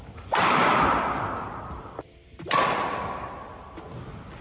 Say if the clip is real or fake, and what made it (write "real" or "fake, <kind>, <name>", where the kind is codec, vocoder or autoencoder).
fake, vocoder, BigVGAN v2